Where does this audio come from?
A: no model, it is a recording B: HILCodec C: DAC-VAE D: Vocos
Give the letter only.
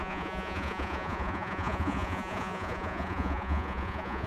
D